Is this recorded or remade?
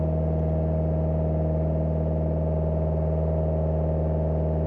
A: recorded